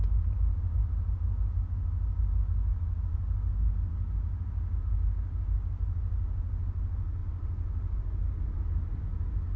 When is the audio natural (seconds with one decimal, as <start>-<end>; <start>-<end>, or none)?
0.0-9.6